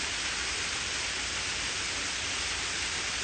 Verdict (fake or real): real